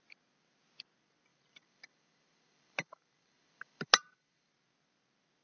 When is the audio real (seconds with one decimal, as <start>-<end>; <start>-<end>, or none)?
0.0-1.3; 4.5-5.4